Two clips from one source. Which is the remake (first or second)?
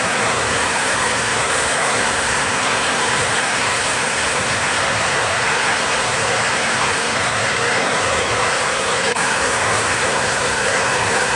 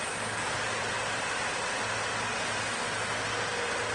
first